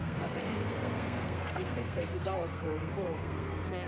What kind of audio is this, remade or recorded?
remade